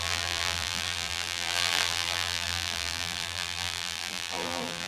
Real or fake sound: fake